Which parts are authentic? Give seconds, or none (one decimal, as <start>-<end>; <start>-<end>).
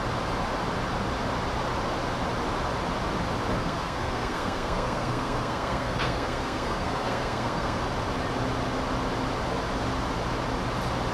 0.0-3.6; 7.8-11.1